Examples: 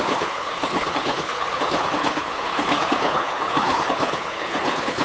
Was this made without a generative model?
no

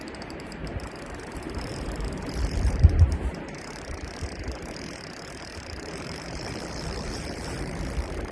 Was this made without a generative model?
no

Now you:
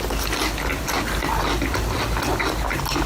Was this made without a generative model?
yes